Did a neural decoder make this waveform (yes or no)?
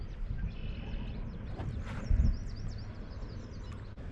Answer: no